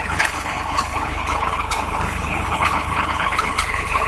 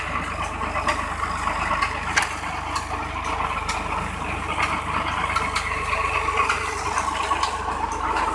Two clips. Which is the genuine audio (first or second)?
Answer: second